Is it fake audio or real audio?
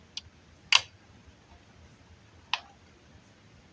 real